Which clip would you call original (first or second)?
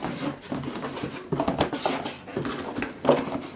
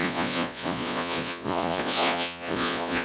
first